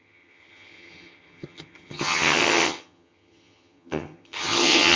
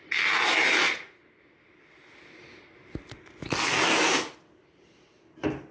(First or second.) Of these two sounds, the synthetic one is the first